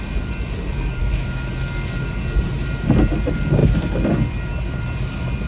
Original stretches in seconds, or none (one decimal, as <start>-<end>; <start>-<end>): 0.0-1.0; 1.5-5.5